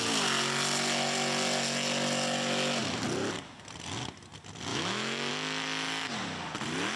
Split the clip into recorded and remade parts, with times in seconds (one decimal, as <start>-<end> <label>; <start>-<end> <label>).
0.0-4.7 recorded; 4.7-5.3 remade; 5.3-7.0 recorded